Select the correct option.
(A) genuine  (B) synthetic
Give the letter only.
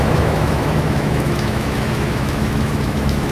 B